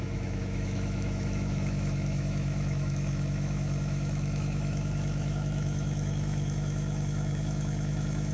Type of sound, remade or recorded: remade